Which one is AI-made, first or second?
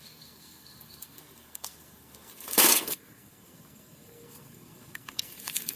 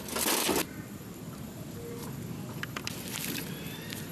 first